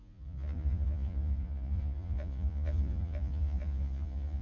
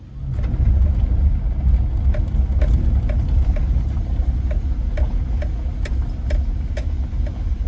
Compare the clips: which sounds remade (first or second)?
first